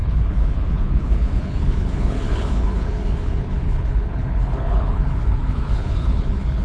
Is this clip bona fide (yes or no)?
no